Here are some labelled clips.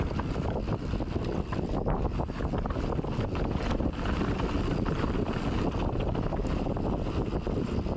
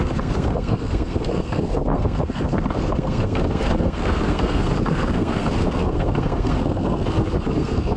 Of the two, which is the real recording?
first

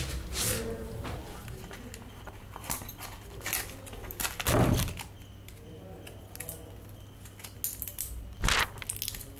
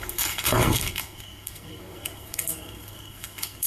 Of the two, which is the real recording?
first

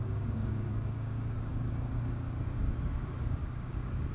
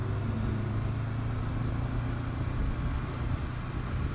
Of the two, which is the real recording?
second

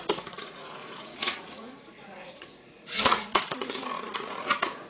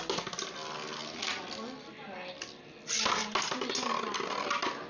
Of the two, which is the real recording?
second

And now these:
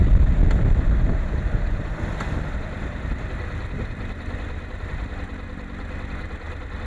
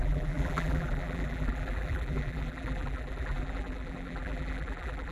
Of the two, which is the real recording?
first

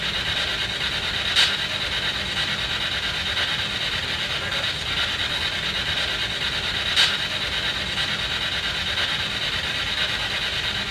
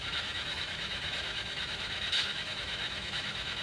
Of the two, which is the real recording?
first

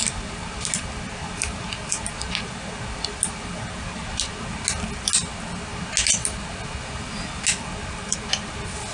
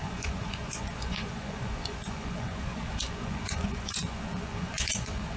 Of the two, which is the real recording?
first